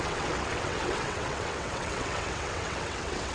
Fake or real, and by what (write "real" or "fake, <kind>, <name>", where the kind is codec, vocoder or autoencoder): fake, vocoder, WaveNeXt